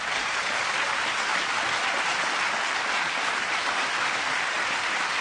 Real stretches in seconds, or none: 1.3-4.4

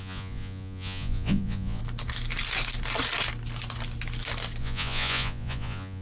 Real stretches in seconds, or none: 1.8-4.6

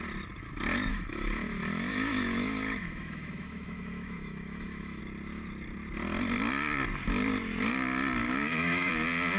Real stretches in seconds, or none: 0.0-0.9; 5.0-8.2; 8.9-9.4